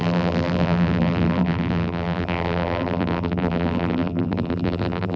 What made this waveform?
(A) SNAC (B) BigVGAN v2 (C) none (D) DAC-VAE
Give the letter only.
B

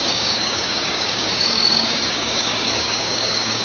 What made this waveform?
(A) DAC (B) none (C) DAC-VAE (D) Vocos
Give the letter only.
A